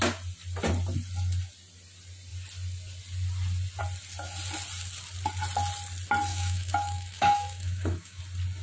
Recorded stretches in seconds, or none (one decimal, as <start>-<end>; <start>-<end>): 0.0-6.3; 8.2-8.6